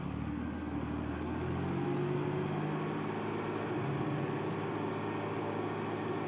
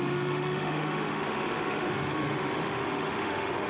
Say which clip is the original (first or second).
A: first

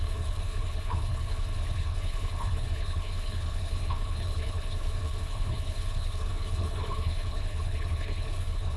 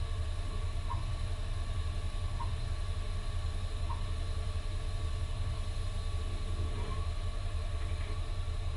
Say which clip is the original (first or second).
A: second